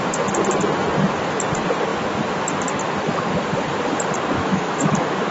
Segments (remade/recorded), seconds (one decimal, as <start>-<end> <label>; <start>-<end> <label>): 0.0-4.4 recorded; 4.4-5.3 remade